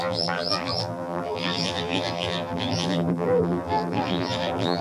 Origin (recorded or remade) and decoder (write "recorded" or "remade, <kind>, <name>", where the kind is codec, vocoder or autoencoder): remade, vocoder, BigVGAN v2